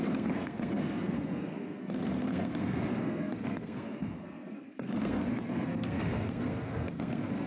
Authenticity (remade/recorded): remade